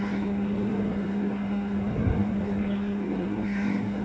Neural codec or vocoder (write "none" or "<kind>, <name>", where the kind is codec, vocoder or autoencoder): codec, SNAC